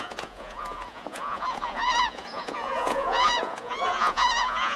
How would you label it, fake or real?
fake